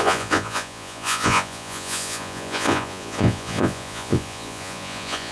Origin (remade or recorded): remade